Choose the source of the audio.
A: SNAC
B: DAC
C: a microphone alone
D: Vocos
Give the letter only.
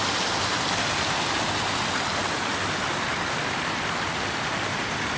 C